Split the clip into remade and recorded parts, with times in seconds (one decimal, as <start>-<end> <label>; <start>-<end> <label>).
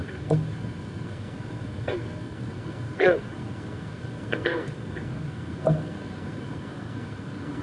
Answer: 0.0-7.6 remade